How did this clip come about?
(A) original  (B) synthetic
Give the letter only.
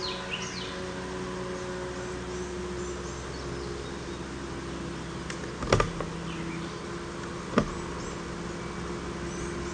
A